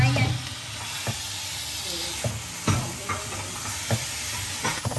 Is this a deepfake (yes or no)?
no